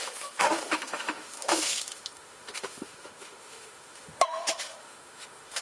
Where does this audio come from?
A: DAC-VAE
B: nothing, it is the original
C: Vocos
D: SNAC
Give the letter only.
A